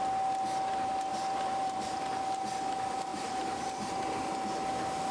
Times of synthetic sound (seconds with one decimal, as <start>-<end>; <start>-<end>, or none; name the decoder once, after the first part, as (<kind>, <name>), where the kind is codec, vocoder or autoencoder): 1.1-2.0 (vocoder, BigVGAN v2); 3.1-3.9